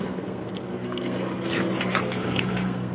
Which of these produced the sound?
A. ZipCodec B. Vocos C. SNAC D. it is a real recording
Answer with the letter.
C